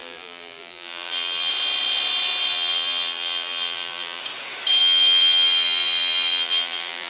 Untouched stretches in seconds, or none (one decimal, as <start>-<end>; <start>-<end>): 1.5-2.5; 4.2-4.8